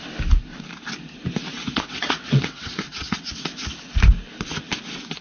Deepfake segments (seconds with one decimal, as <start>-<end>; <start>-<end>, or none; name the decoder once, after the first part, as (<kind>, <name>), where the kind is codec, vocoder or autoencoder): 1.5-3.3 (vocoder, WaveNeXt)